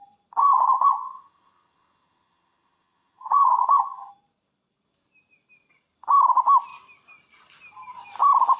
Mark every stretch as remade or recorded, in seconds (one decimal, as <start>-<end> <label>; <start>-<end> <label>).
0.0-0.4 recorded; 0.4-4.1 remade; 4.1-8.6 recorded